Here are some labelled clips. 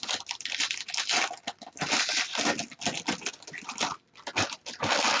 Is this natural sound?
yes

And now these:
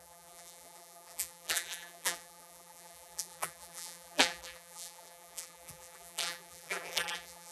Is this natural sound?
no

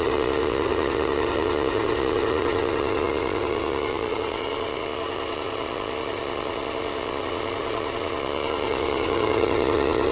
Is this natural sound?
no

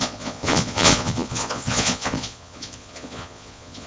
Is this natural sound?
no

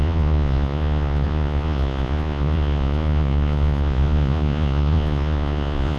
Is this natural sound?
no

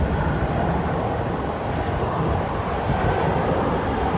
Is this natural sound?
no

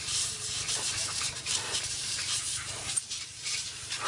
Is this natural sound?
no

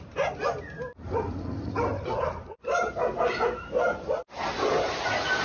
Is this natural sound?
yes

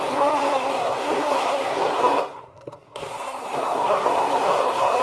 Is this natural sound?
no